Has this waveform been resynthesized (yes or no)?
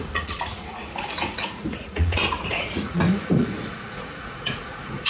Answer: yes